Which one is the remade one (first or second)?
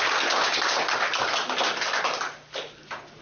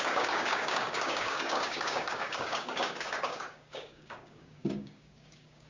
second